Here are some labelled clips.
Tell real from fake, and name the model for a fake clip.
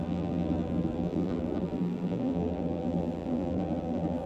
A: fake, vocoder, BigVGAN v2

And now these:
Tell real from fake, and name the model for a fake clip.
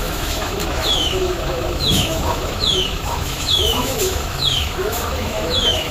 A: fake, autoencoder, DAC-VAE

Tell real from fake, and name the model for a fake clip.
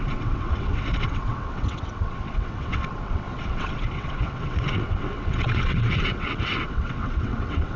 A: fake, vocoder, WaveNeXt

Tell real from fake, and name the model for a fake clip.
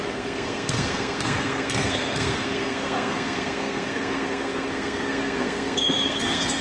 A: fake, codec, SNAC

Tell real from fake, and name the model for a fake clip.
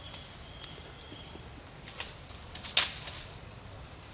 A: real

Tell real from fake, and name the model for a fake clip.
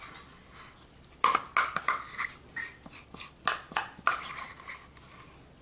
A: real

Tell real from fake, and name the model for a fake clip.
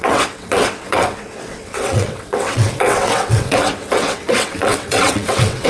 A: fake, vocoder, WaveNeXt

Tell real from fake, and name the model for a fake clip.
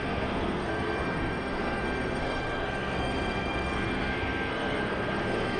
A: fake, codec, SNAC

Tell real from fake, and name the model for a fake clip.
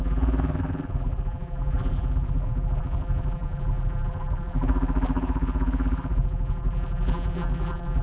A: fake, vocoder, BigVGAN v2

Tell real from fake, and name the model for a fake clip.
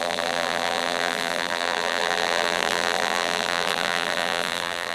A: fake, vocoder, BigVGAN v2